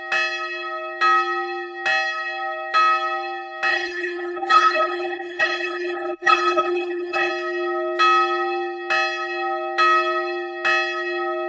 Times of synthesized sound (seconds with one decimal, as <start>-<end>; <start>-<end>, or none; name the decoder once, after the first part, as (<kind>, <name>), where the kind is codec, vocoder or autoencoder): 3.7-7.3 (codec, HILCodec)